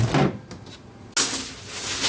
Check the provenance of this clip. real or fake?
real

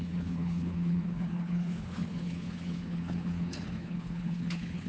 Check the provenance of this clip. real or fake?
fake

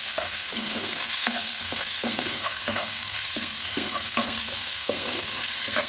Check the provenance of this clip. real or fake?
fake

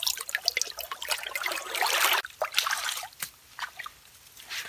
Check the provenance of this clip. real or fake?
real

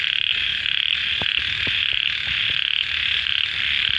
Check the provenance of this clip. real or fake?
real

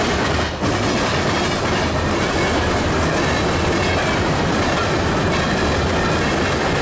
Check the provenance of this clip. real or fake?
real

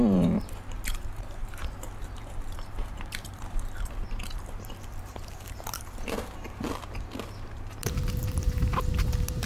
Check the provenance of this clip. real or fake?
fake